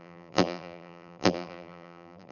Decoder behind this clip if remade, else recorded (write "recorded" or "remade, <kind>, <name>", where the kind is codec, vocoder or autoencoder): remade, vocoder, BigVGAN v2